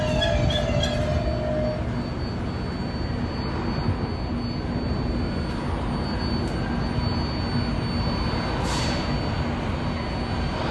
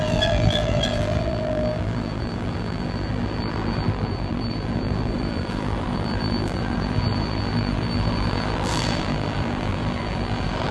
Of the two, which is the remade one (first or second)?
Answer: second